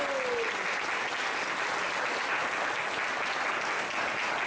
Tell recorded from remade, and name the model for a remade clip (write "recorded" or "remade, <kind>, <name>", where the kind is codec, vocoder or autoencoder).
recorded